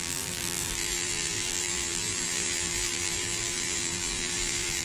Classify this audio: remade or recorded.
remade